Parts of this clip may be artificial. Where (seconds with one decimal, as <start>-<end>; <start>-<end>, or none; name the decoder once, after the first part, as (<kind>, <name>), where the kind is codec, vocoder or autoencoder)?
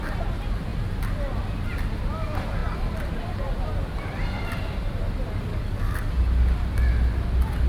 5.5-6.1 (codec, DAC)